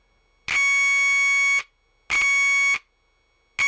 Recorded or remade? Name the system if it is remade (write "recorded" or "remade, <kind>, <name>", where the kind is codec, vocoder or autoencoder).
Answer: recorded